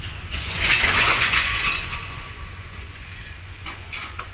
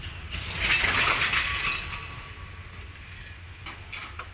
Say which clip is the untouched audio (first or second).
second